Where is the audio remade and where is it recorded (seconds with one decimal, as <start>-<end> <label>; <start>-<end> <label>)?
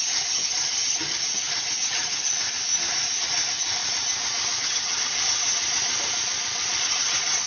0.0-2.3 remade; 2.3-2.9 recorded; 2.9-3.8 remade; 3.8-4.6 recorded; 4.6-5.6 remade; 5.6-6.8 recorded; 6.8-7.5 remade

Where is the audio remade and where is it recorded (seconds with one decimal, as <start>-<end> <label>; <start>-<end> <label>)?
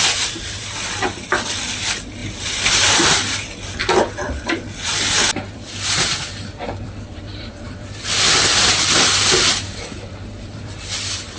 0.0-11.4 remade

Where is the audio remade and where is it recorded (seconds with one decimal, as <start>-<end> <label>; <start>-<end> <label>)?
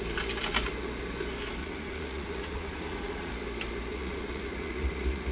0.0-1.6 recorded; 1.6-3.3 remade; 3.3-3.9 recorded; 3.9-5.3 remade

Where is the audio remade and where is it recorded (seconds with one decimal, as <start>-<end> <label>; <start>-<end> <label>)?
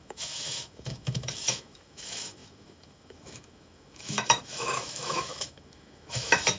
0.0-6.6 remade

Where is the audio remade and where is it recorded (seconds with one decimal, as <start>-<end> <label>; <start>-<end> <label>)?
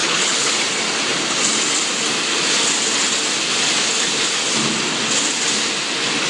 0.0-0.5 remade; 0.5-6.3 recorded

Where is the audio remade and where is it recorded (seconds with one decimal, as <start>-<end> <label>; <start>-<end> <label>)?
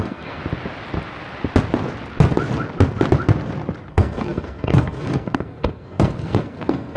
0.0-0.4 remade; 0.4-3.9 recorded; 3.9-7.0 remade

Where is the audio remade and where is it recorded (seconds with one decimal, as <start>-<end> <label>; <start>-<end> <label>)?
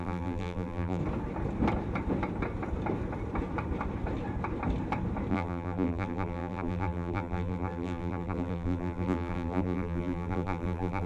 0.0-1.0 remade; 1.0-5.3 recorded; 5.3-11.1 remade